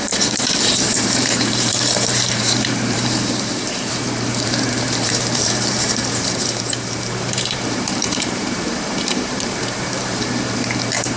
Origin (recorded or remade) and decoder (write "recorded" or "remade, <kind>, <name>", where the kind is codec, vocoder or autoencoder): remade, vocoder, BigVGAN v2